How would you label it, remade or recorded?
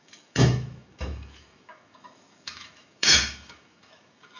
remade